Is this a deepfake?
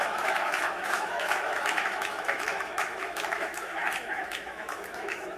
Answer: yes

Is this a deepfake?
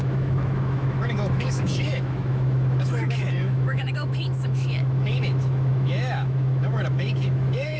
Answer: yes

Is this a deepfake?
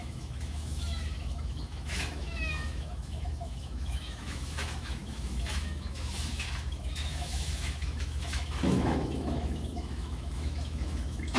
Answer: yes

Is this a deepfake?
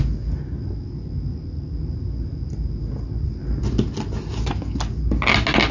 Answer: no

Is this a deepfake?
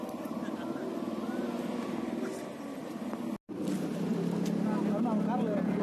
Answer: no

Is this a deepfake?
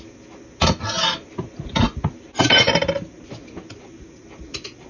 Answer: no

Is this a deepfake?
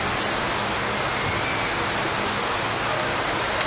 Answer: no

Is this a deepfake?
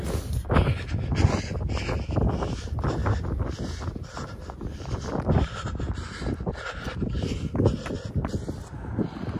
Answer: no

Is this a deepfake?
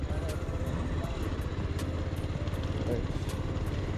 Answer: no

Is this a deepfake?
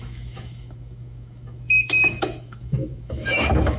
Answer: yes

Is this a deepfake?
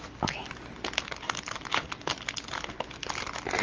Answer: no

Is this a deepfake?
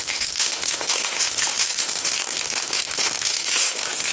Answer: yes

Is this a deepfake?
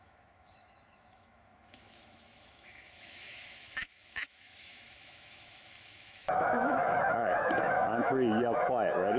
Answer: yes